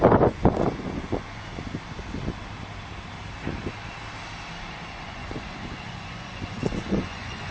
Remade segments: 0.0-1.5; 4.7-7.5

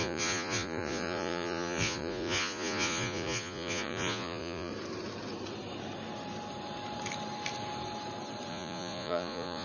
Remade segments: 0.0-4.7; 8.5-9.6

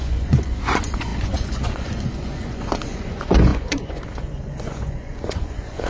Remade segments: 0.0-5.9

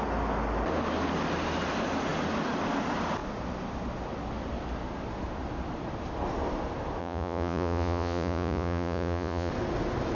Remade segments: 7.0-9.5